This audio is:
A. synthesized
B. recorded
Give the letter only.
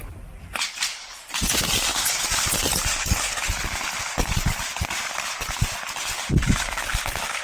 B